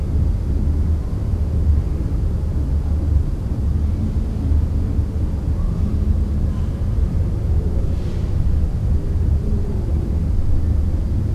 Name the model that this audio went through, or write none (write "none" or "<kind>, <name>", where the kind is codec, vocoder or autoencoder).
none